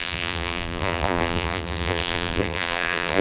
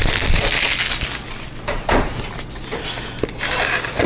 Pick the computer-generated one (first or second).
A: first